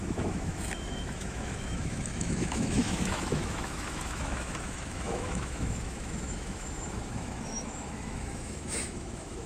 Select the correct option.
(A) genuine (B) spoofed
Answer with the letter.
B